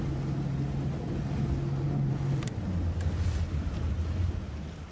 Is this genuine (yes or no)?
yes